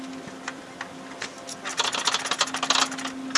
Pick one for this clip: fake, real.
real